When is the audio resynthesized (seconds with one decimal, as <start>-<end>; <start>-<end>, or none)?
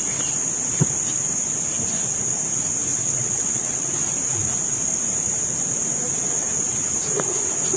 2.9-3.9